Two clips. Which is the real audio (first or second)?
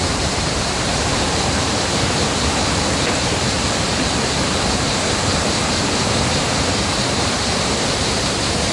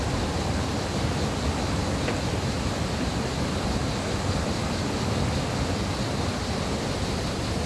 second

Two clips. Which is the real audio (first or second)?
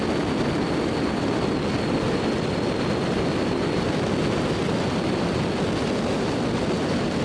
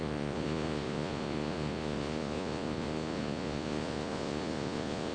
first